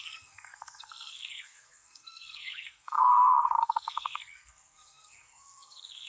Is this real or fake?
fake